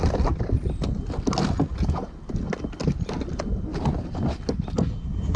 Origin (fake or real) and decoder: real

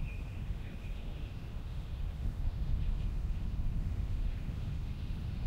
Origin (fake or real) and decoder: fake, autoencoder, DAC-VAE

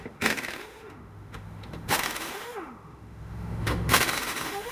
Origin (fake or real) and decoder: fake, autoencoder, DAC-VAE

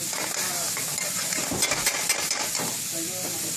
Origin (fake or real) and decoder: real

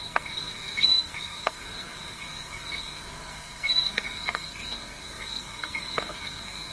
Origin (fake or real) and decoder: fake, codec, SNAC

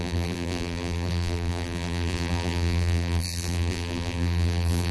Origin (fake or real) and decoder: fake, vocoder, BigVGAN v2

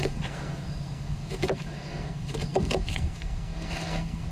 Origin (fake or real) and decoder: fake, codec, SNAC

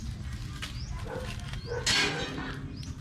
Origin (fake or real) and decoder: real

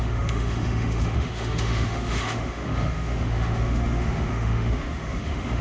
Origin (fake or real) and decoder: fake, autoencoder, DAC-VAE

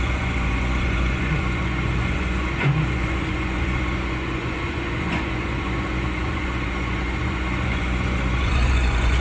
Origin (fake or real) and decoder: fake, vocoder, Vocos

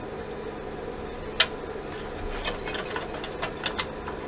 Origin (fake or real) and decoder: real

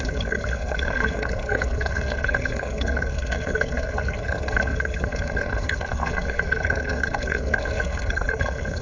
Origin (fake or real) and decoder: fake, codec, SNAC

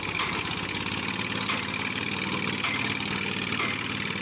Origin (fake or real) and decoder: real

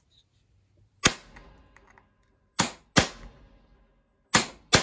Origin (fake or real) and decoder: real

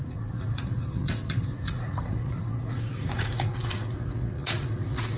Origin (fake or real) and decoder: fake, vocoder, Vocos